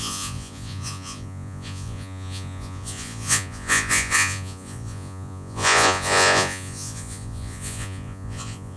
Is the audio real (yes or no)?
no